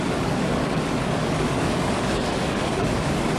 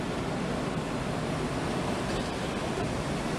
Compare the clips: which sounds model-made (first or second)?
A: first